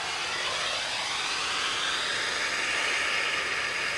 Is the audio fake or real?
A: real